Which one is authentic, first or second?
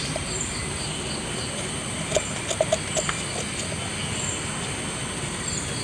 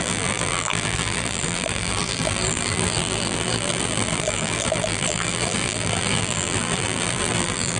first